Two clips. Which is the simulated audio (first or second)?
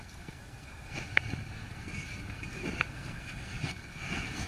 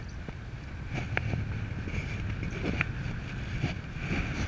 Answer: first